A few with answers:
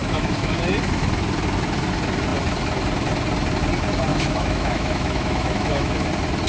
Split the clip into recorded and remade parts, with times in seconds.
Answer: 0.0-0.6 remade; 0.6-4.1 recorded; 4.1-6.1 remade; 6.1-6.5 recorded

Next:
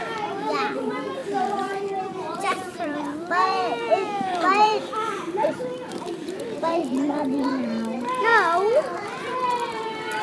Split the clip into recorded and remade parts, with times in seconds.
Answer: 0.0-8.3 remade; 8.3-9.7 recorded; 9.7-10.2 remade

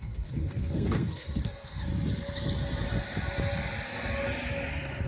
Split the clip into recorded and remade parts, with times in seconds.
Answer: 0.0-1.9 remade; 1.9-5.1 recorded